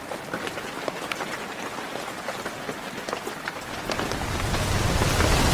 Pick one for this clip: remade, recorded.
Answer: recorded